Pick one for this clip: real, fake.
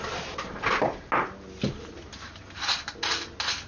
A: real